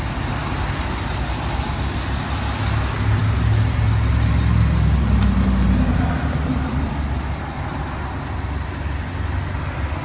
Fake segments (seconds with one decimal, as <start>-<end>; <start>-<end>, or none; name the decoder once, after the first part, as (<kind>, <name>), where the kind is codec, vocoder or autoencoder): none